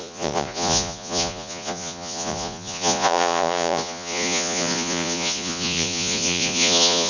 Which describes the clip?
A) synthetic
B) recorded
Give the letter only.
A